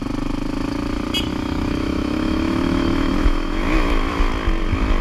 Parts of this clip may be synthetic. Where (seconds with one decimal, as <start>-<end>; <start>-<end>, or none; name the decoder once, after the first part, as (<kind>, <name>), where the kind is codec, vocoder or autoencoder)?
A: 1.3-4.3 (autoencoder, DAC-VAE)